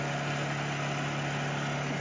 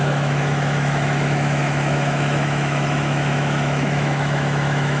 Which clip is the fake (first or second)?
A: second